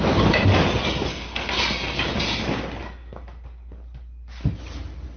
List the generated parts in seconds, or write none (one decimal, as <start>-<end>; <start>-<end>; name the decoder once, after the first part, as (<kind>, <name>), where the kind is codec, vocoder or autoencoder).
1.1-1.6 (codec, SNAC)